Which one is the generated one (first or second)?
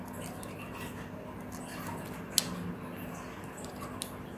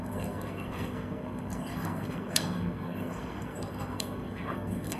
second